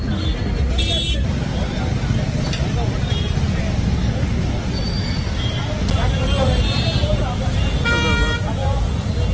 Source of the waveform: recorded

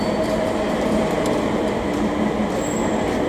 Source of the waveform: remade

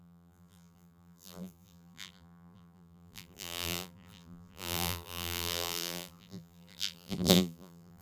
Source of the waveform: remade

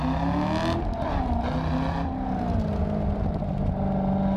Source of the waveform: recorded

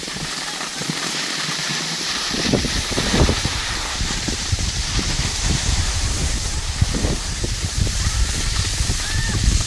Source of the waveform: remade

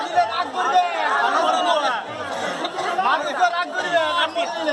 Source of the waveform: recorded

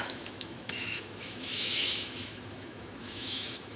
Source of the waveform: remade